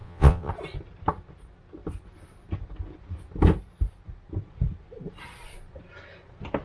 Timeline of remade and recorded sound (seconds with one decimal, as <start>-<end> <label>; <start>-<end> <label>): 0.0-0.5 remade; 0.5-6.6 recorded